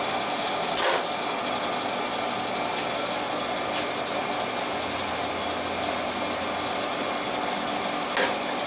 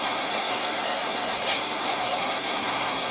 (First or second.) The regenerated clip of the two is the second